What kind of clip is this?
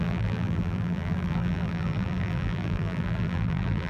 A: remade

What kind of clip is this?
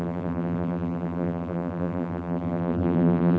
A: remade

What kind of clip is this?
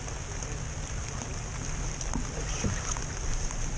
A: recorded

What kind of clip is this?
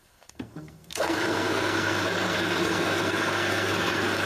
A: remade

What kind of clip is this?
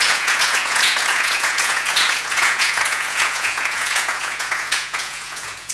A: remade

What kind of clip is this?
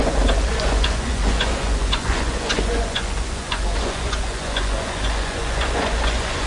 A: remade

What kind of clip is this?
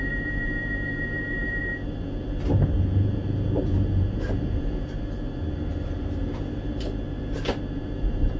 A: remade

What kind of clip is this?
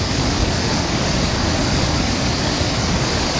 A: remade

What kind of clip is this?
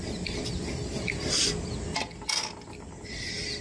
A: recorded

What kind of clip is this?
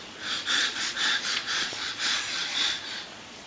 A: remade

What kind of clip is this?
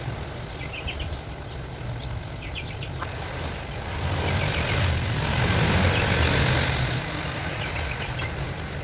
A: recorded